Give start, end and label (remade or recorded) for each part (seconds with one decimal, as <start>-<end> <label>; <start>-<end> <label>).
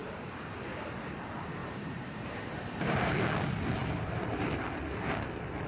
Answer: 0.0-1.6 recorded; 1.6-3.1 remade; 3.1-3.8 recorded; 3.8-4.6 remade; 4.6-5.7 recorded